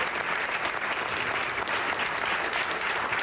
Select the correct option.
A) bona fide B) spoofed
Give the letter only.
A